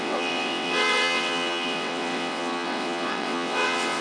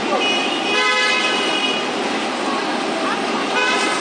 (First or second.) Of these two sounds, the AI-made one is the first